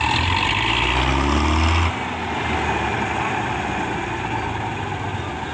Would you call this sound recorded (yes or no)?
yes